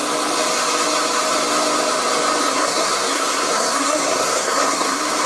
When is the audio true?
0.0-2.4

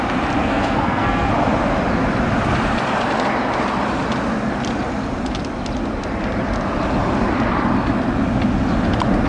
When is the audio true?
0.0-0.4; 1.3-9.3

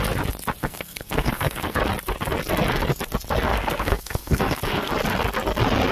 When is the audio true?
0.0-0.6; 1.8-3.5; 4.9-5.9

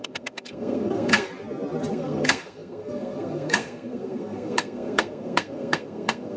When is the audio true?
1.3-1.9